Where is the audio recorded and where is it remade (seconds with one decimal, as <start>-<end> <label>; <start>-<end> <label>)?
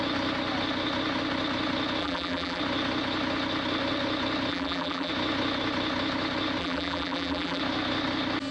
0.0-2.0 recorded; 2.0-2.6 remade; 2.6-4.5 recorded; 4.5-5.1 remade; 5.1-6.6 recorded; 6.6-7.6 remade; 7.6-8.5 recorded